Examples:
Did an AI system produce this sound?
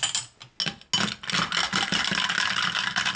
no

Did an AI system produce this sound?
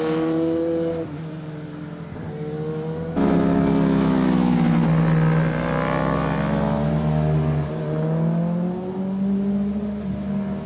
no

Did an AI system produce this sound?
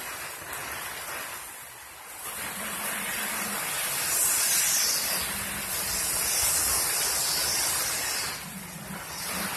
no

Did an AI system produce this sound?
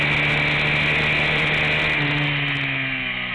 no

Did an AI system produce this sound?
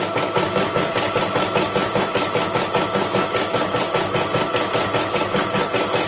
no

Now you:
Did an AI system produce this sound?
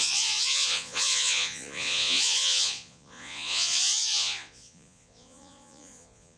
yes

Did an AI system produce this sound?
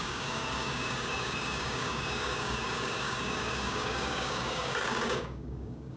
yes